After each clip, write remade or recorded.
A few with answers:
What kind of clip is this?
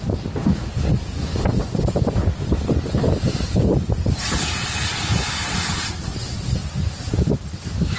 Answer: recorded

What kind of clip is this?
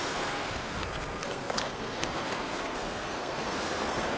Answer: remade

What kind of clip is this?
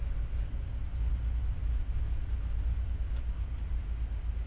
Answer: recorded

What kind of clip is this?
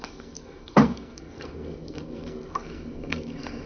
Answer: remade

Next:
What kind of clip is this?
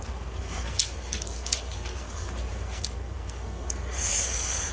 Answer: remade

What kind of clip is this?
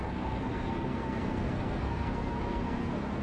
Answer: remade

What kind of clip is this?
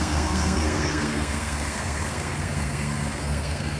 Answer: remade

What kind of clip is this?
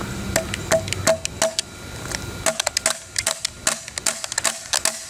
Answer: recorded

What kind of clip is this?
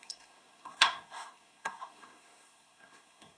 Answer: remade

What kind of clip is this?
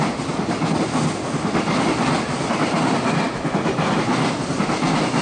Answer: recorded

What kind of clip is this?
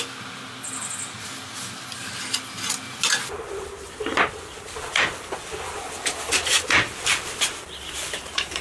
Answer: recorded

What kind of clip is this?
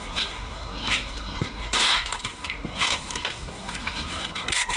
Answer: remade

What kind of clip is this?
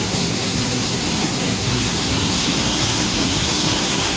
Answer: remade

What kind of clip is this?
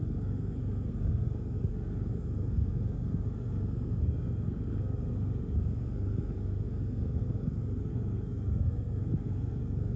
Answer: remade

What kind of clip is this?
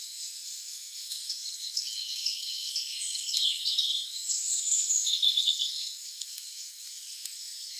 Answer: remade